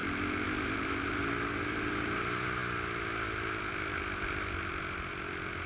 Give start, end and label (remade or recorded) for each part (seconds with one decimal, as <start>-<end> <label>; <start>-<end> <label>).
0.0-5.7 recorded